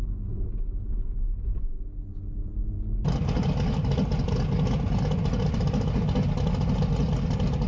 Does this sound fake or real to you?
real